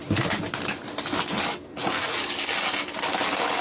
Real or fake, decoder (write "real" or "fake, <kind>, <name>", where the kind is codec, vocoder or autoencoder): real